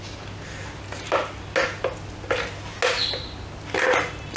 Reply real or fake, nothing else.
real